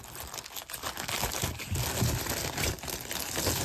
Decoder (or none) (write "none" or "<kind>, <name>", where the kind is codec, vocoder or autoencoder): none